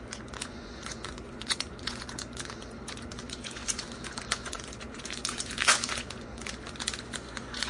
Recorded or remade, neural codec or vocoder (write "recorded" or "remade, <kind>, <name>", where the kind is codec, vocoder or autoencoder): remade, vocoder, Vocos